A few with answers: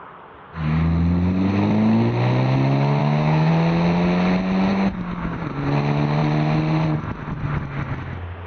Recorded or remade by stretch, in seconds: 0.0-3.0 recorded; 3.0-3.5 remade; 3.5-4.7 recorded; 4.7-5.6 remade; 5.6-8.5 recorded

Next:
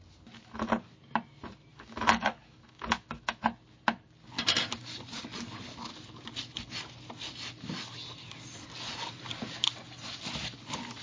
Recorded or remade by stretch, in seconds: 0.0-1.7 recorded; 1.7-3.4 remade; 3.4-11.0 recorded

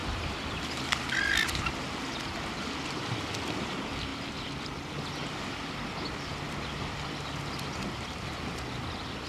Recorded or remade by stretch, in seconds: 0.0-9.3 recorded

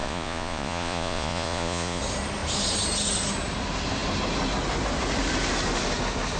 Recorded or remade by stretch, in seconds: 0.0-2.0 remade; 2.0-6.4 recorded

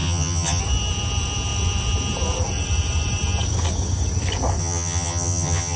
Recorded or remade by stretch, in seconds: 0.0-0.6 remade; 0.6-4.6 recorded; 4.6-5.8 remade

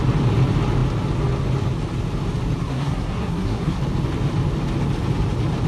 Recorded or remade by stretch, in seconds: 0.0-2.6 recorded; 2.6-3.8 remade; 3.8-5.7 recorded

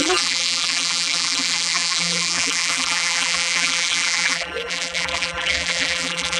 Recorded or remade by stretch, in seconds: 0.0-6.4 remade